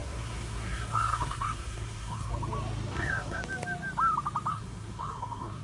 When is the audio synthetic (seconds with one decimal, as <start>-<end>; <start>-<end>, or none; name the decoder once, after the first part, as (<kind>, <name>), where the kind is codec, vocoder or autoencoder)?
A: 0.0-2.3 (codec, SNAC); 2.9-3.4; 4.5-5.6